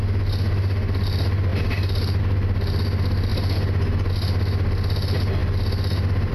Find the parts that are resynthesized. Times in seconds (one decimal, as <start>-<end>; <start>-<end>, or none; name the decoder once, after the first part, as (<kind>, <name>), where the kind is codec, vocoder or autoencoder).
none